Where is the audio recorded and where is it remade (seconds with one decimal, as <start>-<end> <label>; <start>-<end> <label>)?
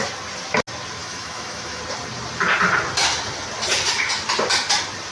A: 0.0-1.0 recorded; 1.0-1.8 remade; 1.8-5.1 recorded